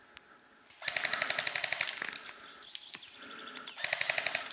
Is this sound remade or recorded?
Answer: recorded